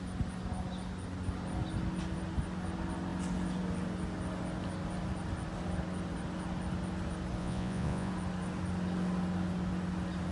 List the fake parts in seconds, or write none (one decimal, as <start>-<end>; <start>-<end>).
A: 7.4-8.1